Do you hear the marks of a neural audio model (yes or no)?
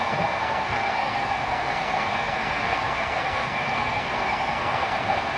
yes